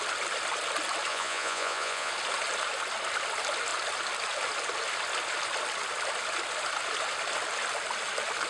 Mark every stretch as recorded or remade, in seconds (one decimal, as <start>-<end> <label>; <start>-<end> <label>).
0.0-1.1 recorded; 1.1-2.1 remade; 2.1-8.5 recorded